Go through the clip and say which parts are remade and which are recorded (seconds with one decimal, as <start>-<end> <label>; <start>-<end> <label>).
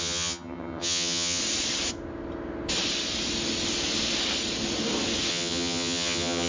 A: 0.0-1.4 remade; 1.4-5.3 recorded; 5.3-6.5 remade